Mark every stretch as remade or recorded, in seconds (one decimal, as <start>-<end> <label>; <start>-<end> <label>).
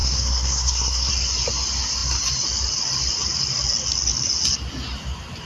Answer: 0.0-1.1 remade; 1.1-5.4 recorded